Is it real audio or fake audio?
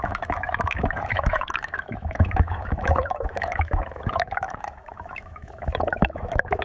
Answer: fake